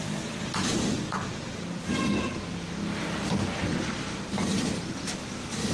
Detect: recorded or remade recorded